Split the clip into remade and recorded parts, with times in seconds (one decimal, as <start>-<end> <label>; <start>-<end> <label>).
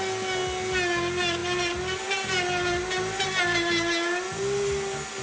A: 0.0-5.2 recorded